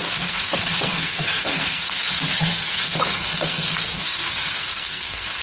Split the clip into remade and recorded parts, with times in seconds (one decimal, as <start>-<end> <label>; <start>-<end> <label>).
0.0-5.4 remade